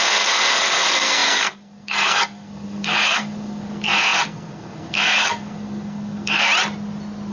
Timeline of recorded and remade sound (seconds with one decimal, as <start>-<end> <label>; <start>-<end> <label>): 0.0-6.5 remade; 6.5-7.3 recorded

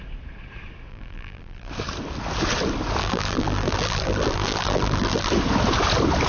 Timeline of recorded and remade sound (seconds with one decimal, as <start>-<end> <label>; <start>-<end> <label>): 0.0-0.9 recorded; 0.9-1.7 remade; 1.7-3.0 recorded; 3.0-5.3 remade; 5.3-6.3 recorded

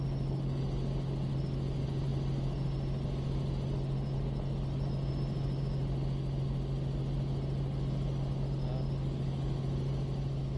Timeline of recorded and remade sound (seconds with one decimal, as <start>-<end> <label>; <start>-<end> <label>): 0.0-10.6 recorded

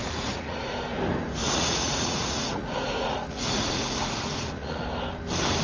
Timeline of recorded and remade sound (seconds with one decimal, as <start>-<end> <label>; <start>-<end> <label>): 0.0-0.7 remade; 0.7-1.4 recorded; 1.4-4.8 remade; 4.8-5.6 recorded

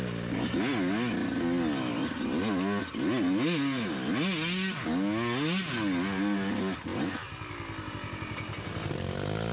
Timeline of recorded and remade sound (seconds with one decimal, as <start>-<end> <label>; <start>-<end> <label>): 0.0-9.5 recorded

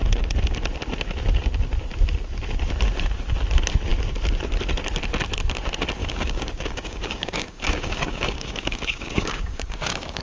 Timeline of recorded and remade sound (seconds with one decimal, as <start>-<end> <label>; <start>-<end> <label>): 0.0-6.0 recorded; 6.0-10.2 remade

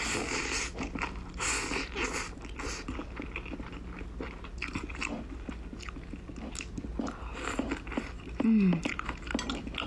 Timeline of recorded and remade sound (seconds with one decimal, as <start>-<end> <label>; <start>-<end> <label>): 0.0-9.9 recorded